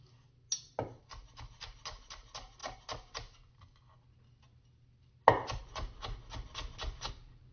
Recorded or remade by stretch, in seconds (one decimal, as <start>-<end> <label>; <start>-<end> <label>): 0.0-7.5 recorded